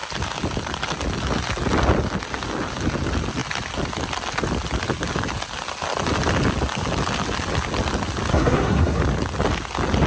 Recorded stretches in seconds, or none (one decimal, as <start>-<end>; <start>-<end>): 0.0-8.3; 9.0-10.1